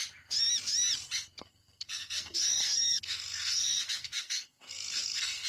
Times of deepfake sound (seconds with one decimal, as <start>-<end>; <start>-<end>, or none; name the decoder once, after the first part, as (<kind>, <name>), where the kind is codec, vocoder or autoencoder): 1.4-5.5 (codec, SNAC)